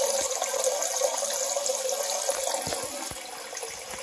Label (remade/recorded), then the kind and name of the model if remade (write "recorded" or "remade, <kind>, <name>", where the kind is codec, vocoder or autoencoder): recorded